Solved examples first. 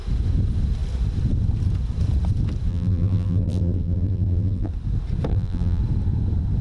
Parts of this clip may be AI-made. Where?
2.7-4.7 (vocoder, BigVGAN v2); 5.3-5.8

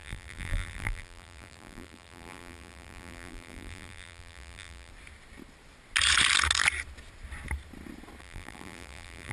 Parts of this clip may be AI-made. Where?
0.0-4.9 (vocoder, BigVGAN v2); 8.2-9.3

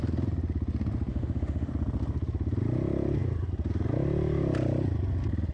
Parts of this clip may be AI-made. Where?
1.1-1.7 (autoencoder, DAC-VAE)